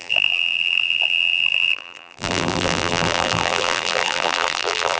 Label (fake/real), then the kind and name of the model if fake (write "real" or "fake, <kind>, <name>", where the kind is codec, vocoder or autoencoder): fake, vocoder, BigVGAN v2